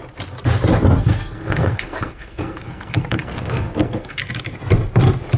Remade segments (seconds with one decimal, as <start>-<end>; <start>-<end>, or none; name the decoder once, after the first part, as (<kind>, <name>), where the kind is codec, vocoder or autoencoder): 1.0-4.2 (codec, SNAC)